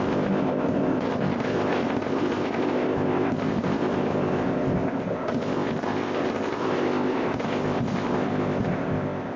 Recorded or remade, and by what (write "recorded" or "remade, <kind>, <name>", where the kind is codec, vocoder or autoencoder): remade, codec, ZipCodec